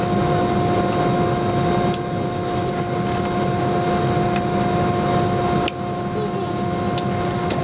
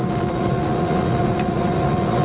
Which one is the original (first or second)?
first